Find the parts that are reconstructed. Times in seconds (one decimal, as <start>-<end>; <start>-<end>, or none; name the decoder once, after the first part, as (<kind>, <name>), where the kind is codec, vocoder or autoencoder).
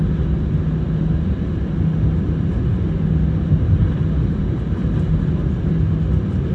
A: none